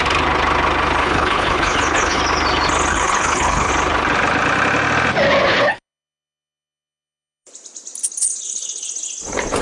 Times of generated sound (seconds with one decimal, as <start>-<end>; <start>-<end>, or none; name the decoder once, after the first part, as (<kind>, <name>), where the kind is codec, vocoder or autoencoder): 1.0-2.2 (codec, HILCodec); 2.9-3.7; 5.4-7.5; 8.2-8.9